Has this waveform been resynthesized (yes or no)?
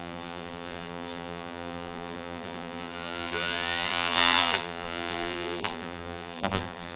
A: yes